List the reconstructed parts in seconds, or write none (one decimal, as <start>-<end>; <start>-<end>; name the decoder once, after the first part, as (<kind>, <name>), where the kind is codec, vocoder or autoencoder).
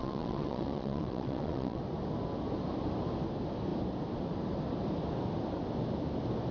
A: 0.0-1.8 (vocoder, WaveNeXt)